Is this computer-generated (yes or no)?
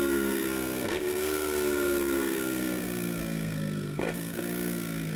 yes